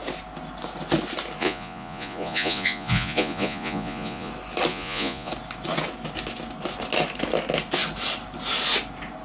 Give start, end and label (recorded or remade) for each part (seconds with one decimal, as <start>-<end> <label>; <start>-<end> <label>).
0.0-1.4 recorded; 1.4-4.3 remade; 4.3-4.7 recorded; 4.7-5.3 remade; 5.3-9.2 recorded